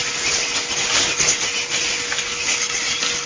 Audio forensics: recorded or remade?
recorded